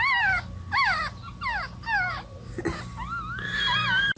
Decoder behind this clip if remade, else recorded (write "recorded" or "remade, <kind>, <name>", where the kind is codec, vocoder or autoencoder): recorded